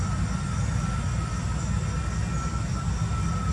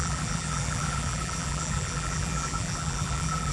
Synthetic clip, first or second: second